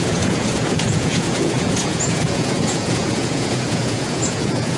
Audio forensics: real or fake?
fake